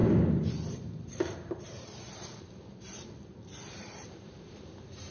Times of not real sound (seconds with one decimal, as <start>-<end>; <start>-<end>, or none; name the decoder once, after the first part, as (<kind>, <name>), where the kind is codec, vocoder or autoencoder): 0.7-5.1 (vocoder, BigVGAN v2)